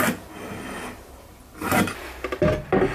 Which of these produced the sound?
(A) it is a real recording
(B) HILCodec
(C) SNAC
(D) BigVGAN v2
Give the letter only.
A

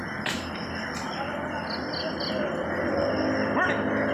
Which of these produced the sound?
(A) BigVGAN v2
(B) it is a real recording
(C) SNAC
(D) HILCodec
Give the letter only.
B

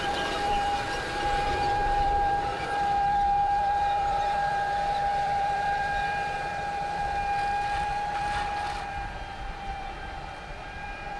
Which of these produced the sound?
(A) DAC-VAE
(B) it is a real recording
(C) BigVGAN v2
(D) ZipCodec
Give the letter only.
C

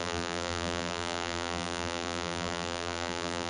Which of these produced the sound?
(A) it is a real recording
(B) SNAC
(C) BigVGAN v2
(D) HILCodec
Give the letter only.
C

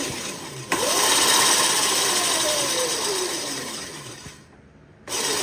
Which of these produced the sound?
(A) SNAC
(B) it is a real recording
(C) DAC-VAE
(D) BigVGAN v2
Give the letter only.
D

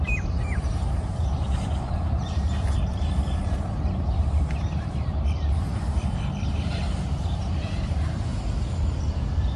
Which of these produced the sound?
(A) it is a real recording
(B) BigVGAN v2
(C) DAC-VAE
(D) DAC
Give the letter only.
B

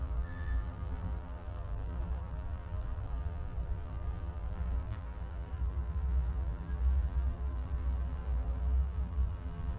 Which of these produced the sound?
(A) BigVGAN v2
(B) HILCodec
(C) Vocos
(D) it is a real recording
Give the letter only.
A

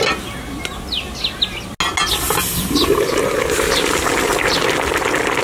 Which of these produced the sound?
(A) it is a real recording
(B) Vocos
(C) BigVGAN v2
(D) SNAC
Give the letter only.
A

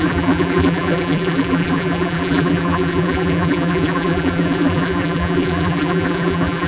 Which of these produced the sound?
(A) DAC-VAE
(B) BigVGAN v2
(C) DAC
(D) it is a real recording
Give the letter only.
B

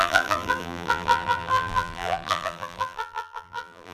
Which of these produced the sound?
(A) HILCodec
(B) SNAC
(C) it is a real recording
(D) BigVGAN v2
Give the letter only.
D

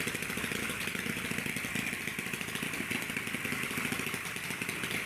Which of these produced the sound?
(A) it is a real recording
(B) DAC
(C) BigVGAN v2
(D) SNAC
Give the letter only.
C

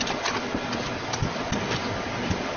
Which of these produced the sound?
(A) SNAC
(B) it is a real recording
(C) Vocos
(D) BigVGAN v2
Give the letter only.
B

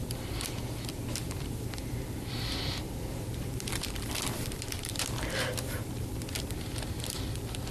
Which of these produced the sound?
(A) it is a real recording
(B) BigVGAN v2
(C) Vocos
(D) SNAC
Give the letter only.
B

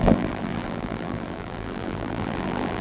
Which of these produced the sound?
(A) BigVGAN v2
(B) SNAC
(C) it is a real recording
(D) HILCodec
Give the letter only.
A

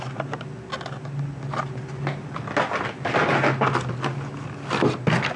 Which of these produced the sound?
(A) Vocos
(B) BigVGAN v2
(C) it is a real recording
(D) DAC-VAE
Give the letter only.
C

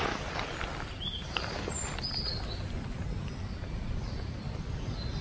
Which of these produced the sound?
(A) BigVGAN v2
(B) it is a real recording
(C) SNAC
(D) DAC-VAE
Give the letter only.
B